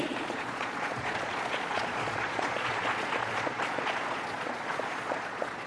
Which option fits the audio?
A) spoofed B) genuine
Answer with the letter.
A